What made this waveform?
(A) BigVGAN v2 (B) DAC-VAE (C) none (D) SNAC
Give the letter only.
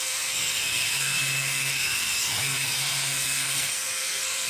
D